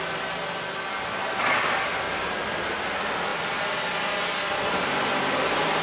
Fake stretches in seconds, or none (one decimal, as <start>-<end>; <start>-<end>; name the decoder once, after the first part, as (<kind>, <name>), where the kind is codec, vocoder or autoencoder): none